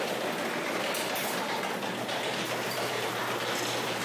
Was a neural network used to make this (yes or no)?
yes